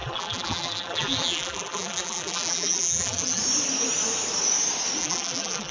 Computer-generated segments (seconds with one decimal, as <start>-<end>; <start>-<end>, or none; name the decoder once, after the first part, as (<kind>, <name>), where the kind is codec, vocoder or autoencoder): 0.0-3.4 (vocoder, BigVGAN v2); 5.0-5.7